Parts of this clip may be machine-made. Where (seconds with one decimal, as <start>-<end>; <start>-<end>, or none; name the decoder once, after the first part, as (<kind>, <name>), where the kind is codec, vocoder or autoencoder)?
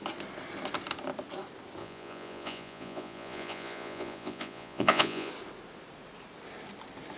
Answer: 1.8-5.3 (vocoder, Vocos)